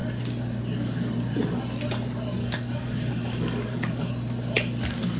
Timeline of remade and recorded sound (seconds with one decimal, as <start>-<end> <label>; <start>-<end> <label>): 0.0-2.4 recorded; 2.4-4.1 remade; 4.1-5.2 recorded